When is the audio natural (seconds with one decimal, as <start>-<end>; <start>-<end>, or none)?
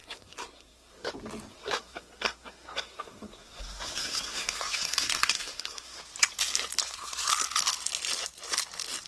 1.1-1.5; 6.0-6.8; 7.3-9.1